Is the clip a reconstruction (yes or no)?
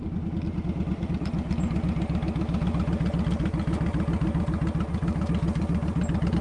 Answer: no